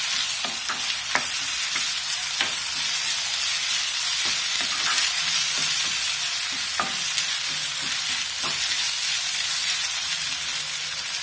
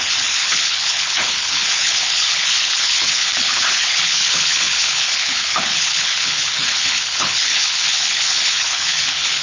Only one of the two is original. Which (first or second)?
first